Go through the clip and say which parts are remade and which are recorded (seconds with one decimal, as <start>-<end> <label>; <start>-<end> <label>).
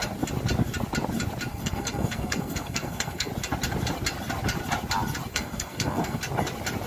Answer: 0.0-1.5 recorded; 1.5-3.3 remade; 3.3-5.3 recorded; 5.3-6.2 remade; 6.2-6.9 recorded